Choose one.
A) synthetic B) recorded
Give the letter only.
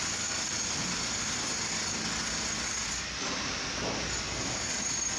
B